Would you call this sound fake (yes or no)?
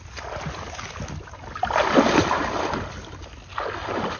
no